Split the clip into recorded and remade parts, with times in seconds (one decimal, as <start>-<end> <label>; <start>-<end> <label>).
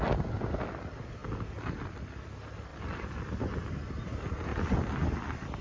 0.0-5.6 recorded